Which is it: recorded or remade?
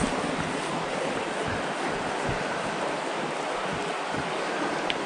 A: recorded